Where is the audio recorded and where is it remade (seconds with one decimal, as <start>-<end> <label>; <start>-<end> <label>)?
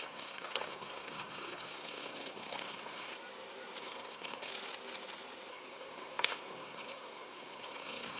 0.0-3.1 remade; 3.1-3.8 recorded; 3.8-4.5 remade; 4.5-5.5 recorded; 5.5-8.2 remade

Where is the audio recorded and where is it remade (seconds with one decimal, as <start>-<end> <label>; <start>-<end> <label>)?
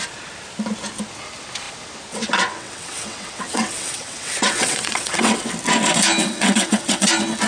0.0-2.1 recorded; 2.1-5.5 remade; 5.5-6.2 recorded; 6.2-7.1 remade; 7.1-7.5 recorded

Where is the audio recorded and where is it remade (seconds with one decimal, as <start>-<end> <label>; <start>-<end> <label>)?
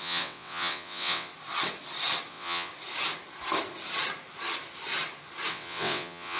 0.0-1.3 remade; 1.3-2.3 recorded; 2.3-2.7 remade; 2.7-5.5 recorded; 5.5-6.4 remade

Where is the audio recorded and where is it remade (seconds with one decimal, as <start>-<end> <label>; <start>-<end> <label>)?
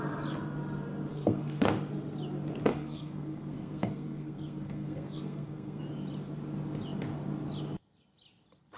0.0-1.1 recorded; 1.1-1.7 remade; 1.7-2.7 recorded; 2.7-5.8 remade; 5.8-8.8 recorded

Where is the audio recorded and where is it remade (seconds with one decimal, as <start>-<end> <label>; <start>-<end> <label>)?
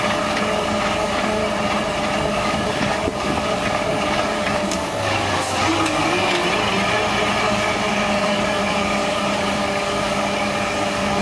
0.0-1.4 remade; 1.4-2.3 recorded; 2.3-6.4 remade; 6.4-7.4 recorded; 7.4-11.2 remade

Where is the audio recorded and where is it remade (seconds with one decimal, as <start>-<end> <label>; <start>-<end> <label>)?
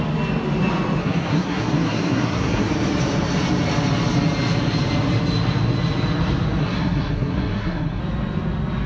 0.0-1.0 recorded; 1.0-2.7 remade; 2.7-6.6 recorded; 6.6-8.0 remade; 8.0-8.9 recorded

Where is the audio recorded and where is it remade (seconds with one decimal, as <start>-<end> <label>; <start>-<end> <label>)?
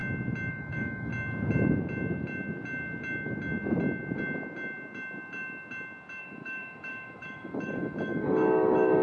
0.0-0.5 recorded; 0.5-1.1 remade; 1.1-6.2 recorded; 6.2-9.0 remade